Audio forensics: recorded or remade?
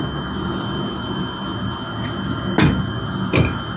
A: recorded